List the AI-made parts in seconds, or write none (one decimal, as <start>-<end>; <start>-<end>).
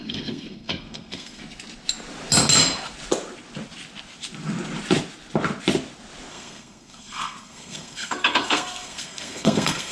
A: 0.0-1.4; 6.3-9.9